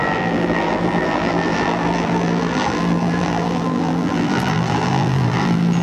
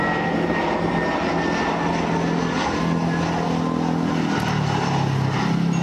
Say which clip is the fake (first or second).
first